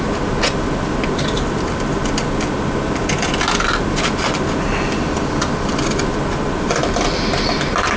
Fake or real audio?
real